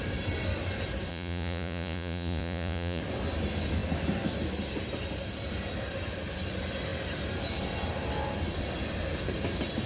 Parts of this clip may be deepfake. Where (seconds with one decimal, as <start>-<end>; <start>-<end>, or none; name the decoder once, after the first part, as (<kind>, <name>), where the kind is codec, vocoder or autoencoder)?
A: 1.1-3.0 (vocoder, Vocos)